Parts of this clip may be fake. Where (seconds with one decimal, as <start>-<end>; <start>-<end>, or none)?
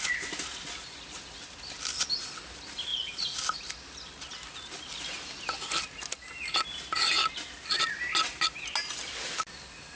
none